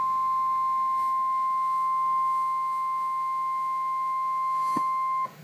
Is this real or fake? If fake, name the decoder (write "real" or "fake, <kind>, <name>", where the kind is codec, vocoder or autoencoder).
fake, autoencoder, DAC-VAE